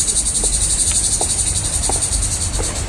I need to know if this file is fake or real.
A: fake